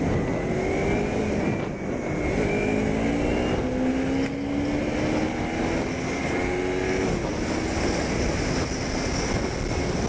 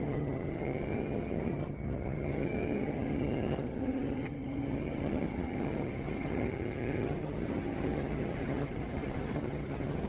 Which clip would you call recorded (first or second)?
first